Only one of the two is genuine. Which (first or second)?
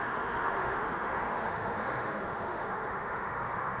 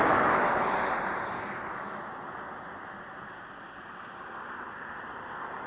second